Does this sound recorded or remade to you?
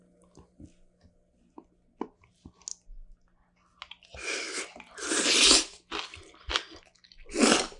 recorded